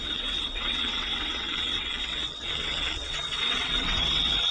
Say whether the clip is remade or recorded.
remade